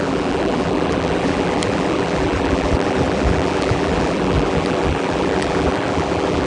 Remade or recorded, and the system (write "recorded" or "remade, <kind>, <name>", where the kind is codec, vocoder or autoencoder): remade, vocoder, BigVGAN v2